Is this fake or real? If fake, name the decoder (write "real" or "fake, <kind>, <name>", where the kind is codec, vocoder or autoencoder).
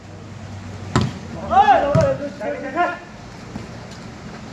real